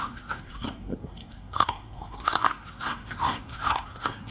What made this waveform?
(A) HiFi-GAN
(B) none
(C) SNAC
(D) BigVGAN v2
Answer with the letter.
C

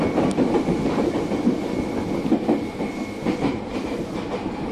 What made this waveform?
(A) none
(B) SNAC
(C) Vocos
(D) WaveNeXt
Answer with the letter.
A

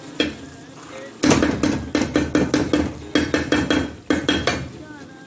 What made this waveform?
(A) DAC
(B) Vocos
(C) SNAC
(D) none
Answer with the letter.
D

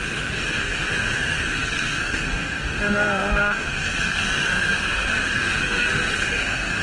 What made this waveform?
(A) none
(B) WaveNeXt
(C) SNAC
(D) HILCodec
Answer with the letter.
C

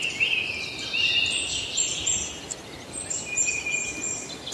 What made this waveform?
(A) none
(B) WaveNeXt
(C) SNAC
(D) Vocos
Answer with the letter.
A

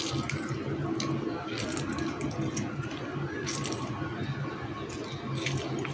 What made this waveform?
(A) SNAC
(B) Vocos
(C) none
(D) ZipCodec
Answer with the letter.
C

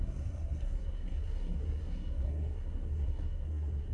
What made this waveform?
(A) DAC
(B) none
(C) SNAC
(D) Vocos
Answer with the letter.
C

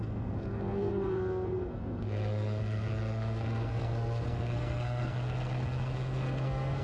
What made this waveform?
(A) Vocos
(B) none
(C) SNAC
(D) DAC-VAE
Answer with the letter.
C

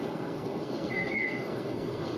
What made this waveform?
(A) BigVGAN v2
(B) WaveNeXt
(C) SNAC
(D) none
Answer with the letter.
C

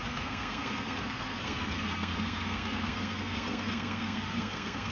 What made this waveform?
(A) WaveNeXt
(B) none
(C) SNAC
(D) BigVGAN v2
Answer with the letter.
C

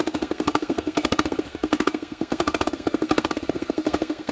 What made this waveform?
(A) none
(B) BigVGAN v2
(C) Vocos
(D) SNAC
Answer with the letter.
D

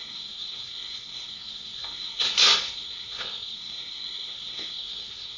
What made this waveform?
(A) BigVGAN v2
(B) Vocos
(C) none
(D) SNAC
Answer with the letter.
D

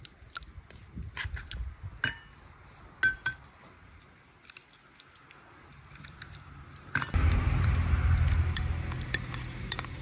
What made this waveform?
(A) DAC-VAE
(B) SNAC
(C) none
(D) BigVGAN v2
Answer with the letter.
C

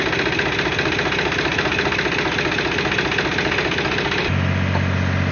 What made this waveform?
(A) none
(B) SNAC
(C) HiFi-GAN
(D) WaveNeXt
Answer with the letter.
A